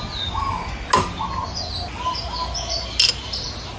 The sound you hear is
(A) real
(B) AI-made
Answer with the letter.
A